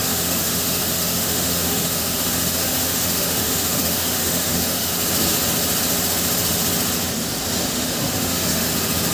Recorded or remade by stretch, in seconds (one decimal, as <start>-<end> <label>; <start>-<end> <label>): 0.0-4.9 remade; 4.9-7.6 recorded; 7.6-8.7 remade; 8.7-9.1 recorded